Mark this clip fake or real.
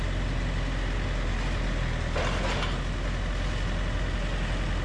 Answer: real